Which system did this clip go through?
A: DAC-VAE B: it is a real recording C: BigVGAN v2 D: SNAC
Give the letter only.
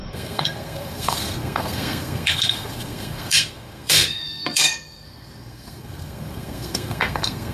D